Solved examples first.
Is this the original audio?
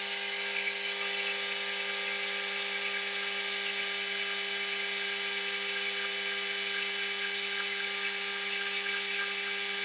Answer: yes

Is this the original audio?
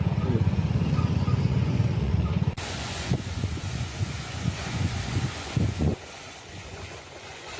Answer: no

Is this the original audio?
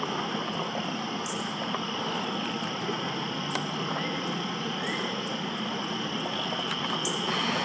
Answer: yes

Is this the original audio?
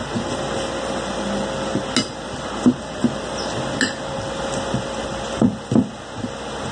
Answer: yes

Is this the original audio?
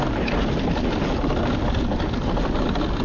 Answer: yes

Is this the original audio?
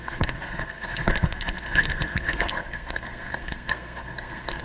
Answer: no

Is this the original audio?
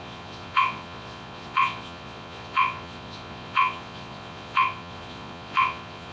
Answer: no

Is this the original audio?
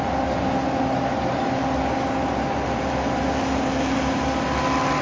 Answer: yes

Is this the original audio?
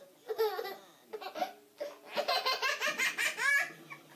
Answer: yes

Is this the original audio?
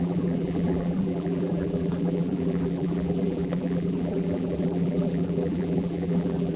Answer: no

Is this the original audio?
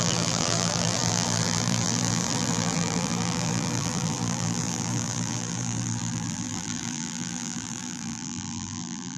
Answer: no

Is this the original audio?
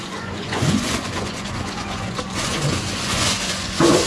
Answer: no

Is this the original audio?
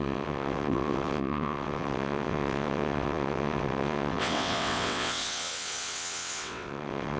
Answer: no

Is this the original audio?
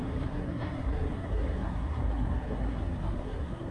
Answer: no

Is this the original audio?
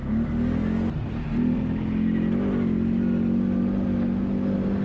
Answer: yes